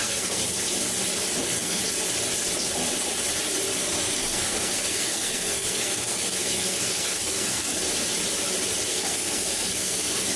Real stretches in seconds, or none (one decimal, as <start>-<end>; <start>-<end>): 0.4-1.4; 1.8-3.8; 7.8-8.9